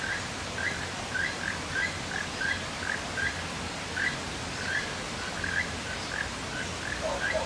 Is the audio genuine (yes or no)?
yes